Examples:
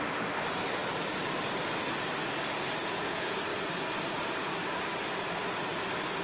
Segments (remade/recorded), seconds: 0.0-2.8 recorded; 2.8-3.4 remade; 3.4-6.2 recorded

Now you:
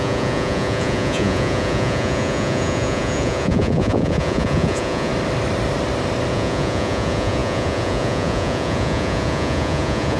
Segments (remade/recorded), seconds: 0.0-5.1 remade; 5.1-6.3 recorded; 6.3-10.2 remade

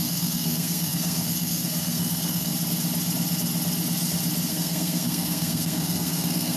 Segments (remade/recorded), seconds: 0.0-2.5 remade; 2.5-4.5 recorded; 4.5-6.6 remade

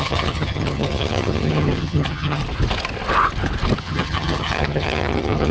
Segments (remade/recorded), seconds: 0.0-2.4 remade; 2.4-3.8 recorded; 3.8-5.5 remade

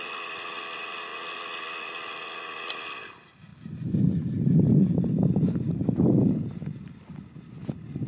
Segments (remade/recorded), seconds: 0.0-3.5 recorded; 3.5-7.2 remade; 7.2-8.1 recorded

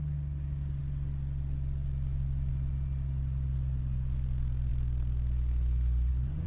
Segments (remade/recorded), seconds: 0.0-6.5 recorded

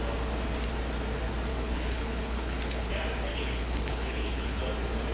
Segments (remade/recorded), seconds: 0.0-1.5 recorded; 1.5-2.9 remade; 2.9-3.3 recorded; 3.3-4.6 remade; 4.6-5.1 recorded

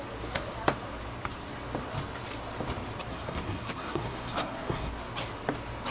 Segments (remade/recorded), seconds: 0.0-3.1 recorded; 3.1-4.9 remade; 4.9-5.9 recorded